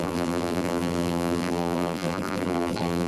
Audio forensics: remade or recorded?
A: remade